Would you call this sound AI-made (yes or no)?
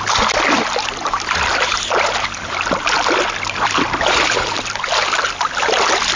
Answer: no